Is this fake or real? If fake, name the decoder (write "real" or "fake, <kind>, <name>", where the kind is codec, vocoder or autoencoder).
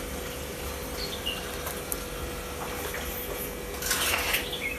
real